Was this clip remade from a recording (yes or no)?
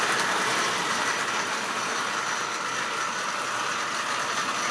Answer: yes